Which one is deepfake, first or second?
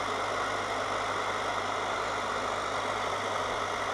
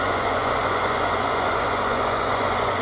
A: second